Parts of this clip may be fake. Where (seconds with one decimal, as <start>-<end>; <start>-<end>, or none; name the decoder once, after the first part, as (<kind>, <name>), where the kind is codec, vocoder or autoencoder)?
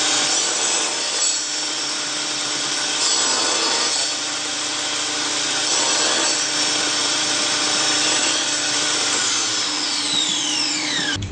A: 0.0-3.1 (vocoder, BigVGAN v2); 7.0-11.3